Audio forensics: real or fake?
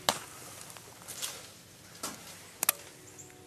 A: real